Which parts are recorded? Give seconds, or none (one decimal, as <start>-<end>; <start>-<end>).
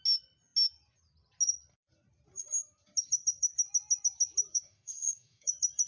0.0-4.5; 5.5-5.9